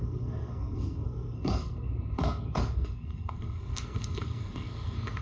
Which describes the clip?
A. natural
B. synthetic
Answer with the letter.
B